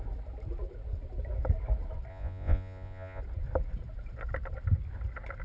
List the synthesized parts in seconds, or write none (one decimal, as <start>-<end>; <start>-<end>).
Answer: 2.1-3.2